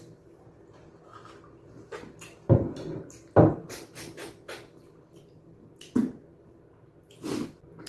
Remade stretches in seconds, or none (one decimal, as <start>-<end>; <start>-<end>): 1.1-5.8